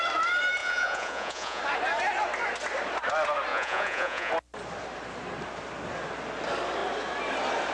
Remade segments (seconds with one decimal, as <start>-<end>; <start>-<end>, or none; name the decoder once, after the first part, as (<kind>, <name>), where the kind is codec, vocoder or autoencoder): 0.6-1.6 (vocoder, Vocos); 3.5-4.3